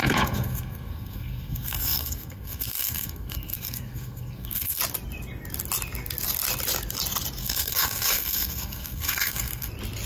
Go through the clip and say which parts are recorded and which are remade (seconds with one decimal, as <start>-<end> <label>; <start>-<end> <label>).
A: 0.0-4.8 remade; 4.8-7.4 recorded; 7.4-9.7 remade; 9.7-10.1 recorded